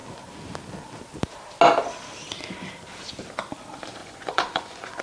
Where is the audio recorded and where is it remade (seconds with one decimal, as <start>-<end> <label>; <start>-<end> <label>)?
0.0-4.0 recorded; 4.0-5.0 remade